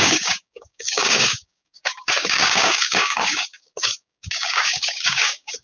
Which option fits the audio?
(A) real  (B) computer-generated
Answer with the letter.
B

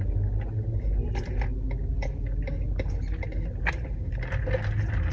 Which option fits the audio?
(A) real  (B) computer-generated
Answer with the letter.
A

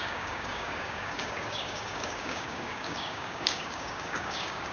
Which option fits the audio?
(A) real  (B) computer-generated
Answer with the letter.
B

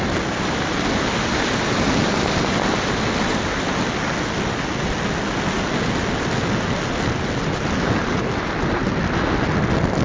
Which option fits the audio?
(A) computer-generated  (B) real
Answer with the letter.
B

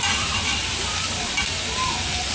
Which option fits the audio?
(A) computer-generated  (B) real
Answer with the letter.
B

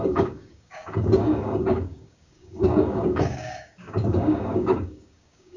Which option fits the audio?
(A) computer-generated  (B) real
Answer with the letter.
A